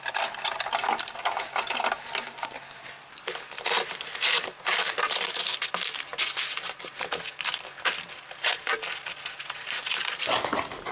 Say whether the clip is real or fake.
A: real